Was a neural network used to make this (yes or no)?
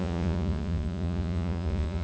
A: yes